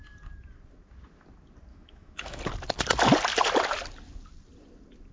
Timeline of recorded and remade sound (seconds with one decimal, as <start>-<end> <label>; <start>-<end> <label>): 0.0-1.7 recorded; 1.7-2.4 remade; 2.4-5.1 recorded